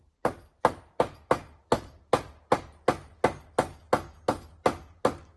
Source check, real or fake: real